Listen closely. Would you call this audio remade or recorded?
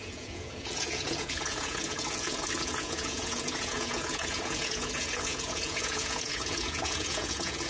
remade